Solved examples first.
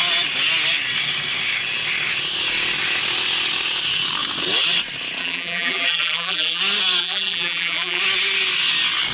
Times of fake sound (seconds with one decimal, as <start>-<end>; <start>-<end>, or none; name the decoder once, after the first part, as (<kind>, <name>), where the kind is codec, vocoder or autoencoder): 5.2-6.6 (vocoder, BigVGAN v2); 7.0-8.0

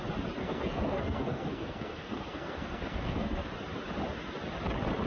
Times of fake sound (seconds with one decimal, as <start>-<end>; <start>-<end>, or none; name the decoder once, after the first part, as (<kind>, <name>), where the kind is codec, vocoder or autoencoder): 0.4-3.5 (codec, SNAC)

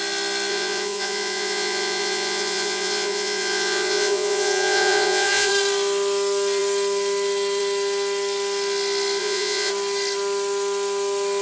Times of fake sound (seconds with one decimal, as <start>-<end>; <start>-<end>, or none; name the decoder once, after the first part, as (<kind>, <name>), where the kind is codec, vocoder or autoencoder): 0.5-5.5 (vocoder, Vocos); 9.2-9.7

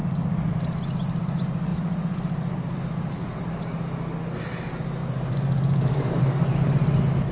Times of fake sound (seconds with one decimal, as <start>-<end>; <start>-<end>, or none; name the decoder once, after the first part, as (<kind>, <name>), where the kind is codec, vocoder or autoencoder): 0.0-0.5 (vocoder, BigVGAN v2); 5.0-6.2